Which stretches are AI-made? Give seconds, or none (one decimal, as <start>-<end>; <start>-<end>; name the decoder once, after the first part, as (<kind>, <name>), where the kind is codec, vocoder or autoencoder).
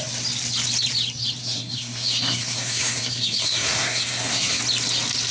1.4-4.6 (codec, SNAC)